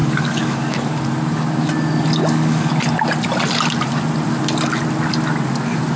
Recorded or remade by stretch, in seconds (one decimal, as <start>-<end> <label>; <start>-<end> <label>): 0.0-1.0 remade; 1.0-2.2 recorded; 2.2-2.7 remade; 2.7-6.0 recorded